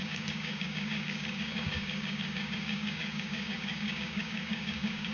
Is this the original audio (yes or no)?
no